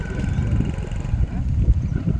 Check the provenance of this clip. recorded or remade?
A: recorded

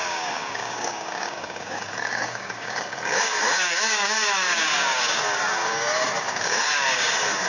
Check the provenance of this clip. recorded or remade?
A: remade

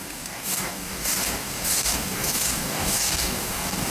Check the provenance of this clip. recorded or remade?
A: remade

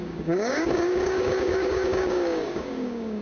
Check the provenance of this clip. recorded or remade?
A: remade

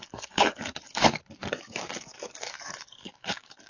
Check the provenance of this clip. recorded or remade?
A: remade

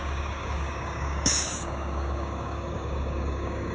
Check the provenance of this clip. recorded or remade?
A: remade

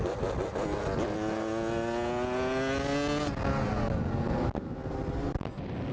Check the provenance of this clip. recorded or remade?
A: recorded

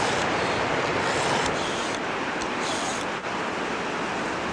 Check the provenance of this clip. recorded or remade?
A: recorded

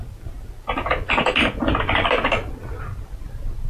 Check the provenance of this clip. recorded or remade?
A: recorded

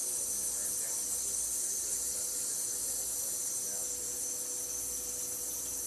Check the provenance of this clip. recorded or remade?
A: recorded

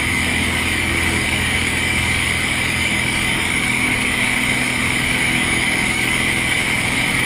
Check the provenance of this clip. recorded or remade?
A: remade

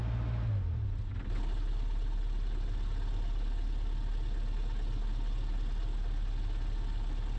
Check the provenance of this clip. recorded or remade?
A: recorded